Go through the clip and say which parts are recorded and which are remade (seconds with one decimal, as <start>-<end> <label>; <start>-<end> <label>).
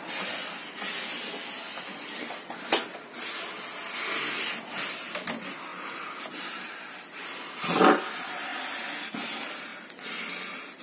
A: 0.0-10.8 recorded